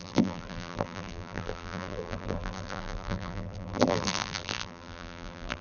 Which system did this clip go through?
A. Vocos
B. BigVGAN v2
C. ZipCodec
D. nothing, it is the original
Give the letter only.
B